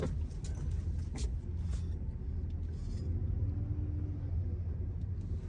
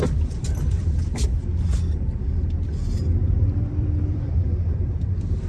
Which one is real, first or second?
first